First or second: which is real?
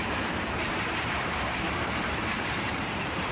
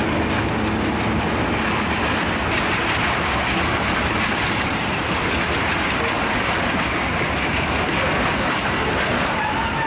second